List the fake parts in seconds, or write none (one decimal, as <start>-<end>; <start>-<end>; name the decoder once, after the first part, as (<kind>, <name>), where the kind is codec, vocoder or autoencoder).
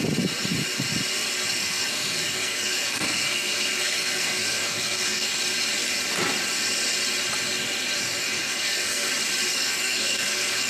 1.6-5.4 (codec, SNAC); 8.2-9.1; 9.5-10.7